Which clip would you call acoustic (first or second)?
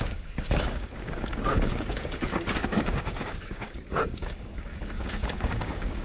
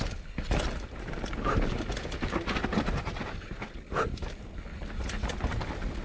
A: second